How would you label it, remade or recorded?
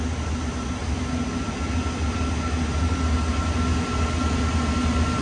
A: recorded